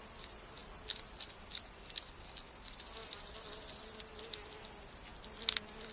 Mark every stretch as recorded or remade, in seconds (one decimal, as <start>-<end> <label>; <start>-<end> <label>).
0.0-5.9 recorded